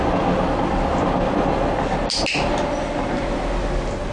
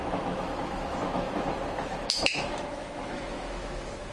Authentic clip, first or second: first